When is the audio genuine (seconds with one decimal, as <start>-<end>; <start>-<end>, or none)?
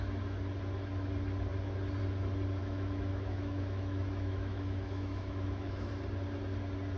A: 0.0-2.6; 5.9-7.0